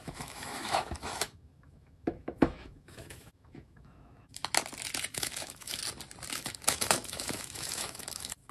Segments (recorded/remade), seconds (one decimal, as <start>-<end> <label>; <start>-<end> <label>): 0.0-4.4 remade; 4.4-5.1 recorded; 5.1-5.8 remade; 5.8-6.3 recorded; 6.3-8.5 remade

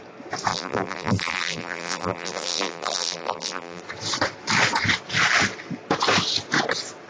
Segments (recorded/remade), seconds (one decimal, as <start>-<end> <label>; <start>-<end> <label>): 0.0-0.5 recorded; 0.5-3.8 remade; 3.8-7.1 recorded

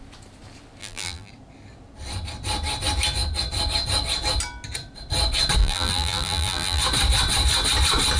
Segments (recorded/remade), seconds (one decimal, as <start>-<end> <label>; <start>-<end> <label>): 0.0-0.8 recorded; 0.8-1.3 remade; 1.3-5.6 recorded; 5.6-6.8 remade; 6.8-8.2 recorded

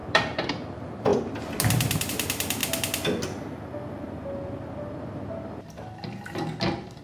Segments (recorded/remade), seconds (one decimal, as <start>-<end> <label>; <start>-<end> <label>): 0.0-1.1 remade; 1.1-2.1 recorded; 2.1-2.6 remade; 2.6-7.0 recorded